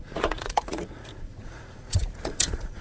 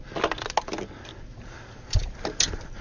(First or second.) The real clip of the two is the second